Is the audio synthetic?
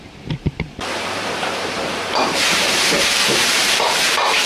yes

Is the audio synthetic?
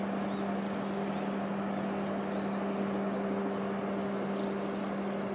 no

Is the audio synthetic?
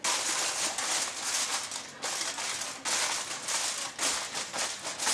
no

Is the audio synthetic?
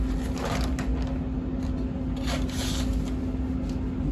no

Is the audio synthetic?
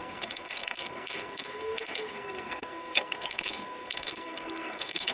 yes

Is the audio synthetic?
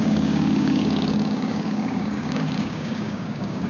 yes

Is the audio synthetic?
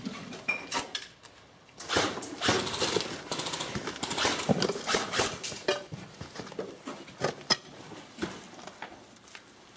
no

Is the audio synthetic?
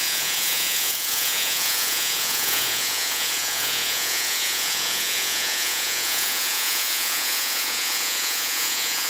yes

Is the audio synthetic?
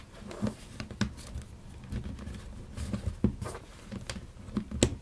no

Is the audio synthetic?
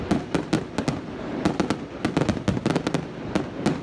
no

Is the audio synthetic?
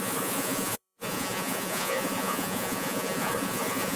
yes